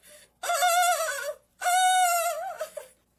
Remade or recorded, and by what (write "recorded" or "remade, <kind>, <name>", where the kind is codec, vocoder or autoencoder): recorded